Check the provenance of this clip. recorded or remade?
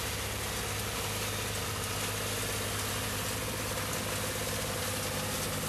recorded